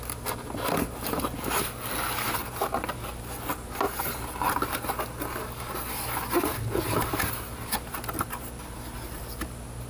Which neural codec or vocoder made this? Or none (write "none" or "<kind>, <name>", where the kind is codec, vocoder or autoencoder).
none